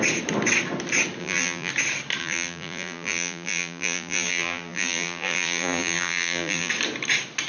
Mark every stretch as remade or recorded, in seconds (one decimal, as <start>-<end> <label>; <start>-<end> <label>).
0.0-1.2 recorded; 1.2-1.7 remade; 1.7-2.2 recorded; 2.2-6.7 remade; 6.7-7.5 recorded